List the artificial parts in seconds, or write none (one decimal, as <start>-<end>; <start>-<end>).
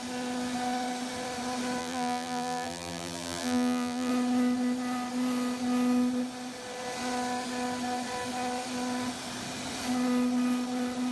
1.8-4.1